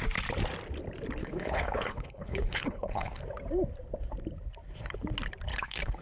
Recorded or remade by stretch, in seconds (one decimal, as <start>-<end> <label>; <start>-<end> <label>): 0.0-1.2 recorded; 1.2-3.2 remade; 3.2-5.5 recorded; 5.5-6.0 remade